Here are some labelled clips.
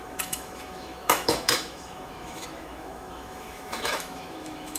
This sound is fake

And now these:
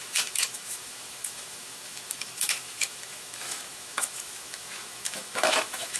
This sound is fake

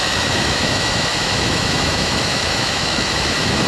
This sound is fake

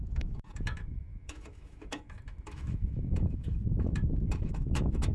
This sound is fake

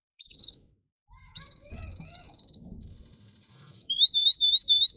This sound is fake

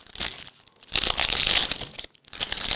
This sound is real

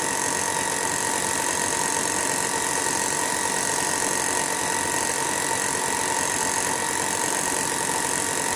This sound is real